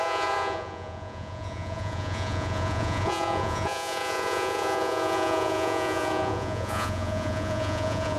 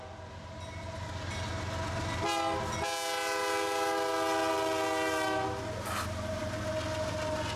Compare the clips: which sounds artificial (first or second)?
first